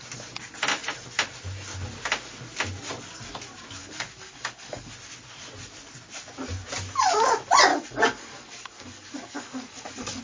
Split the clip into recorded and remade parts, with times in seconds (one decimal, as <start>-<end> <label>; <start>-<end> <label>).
0.0-3.8 recorded; 3.8-4.9 remade; 4.9-7.7 recorded; 7.7-10.2 remade